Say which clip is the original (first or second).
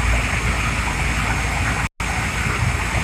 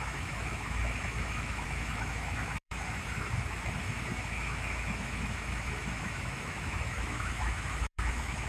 first